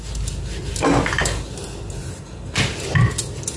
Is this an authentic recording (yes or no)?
yes